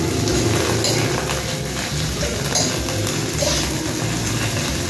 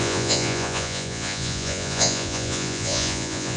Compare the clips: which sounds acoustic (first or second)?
first